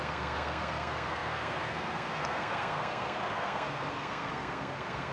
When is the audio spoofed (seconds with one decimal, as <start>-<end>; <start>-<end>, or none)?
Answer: 0.0-5.1